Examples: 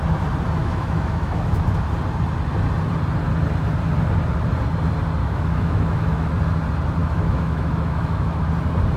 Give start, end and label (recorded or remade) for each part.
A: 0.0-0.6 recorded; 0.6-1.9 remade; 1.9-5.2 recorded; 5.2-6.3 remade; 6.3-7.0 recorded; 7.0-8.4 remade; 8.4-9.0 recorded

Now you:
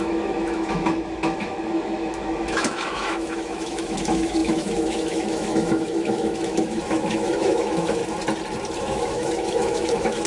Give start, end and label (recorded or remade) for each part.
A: 0.0-8.0 remade; 8.0-8.8 recorded; 8.8-10.3 remade

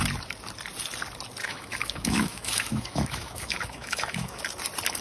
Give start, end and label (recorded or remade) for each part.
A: 0.0-1.4 recorded; 1.4-4.4 remade; 4.4-5.0 recorded

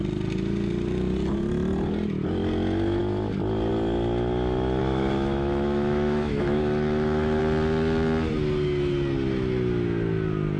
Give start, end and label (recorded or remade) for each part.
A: 0.0-4.8 recorded; 4.8-7.4 remade; 7.4-10.6 recorded